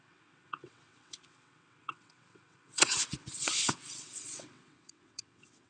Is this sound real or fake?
fake